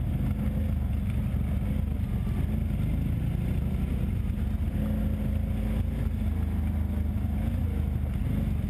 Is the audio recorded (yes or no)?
yes